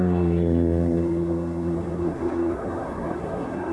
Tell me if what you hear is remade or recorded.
remade